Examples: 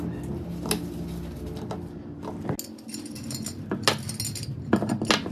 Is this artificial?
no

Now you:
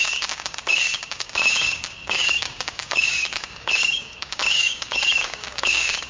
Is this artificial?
yes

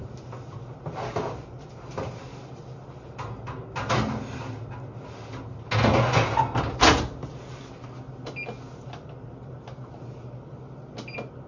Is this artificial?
no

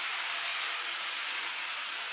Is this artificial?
no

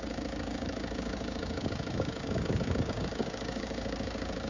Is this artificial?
yes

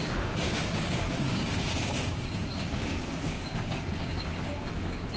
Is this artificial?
yes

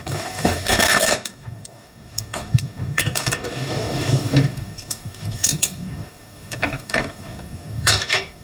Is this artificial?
yes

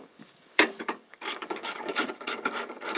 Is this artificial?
yes